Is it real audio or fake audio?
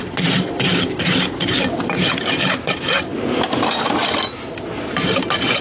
real